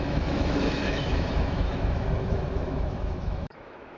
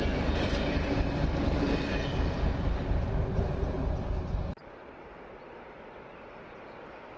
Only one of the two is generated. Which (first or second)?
first